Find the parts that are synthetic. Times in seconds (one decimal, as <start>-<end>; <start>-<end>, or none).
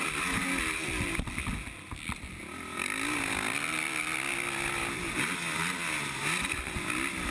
none